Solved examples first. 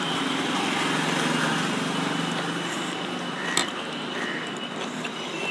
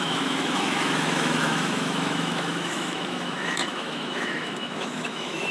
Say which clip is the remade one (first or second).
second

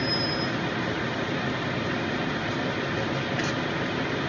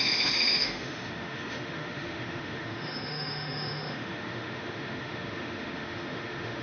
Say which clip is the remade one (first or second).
second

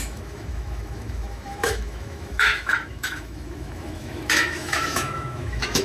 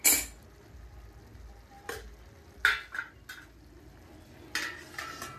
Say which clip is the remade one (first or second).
first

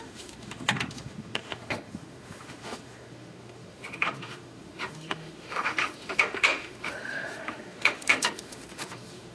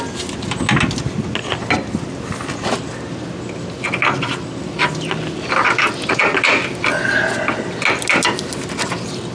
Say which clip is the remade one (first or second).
first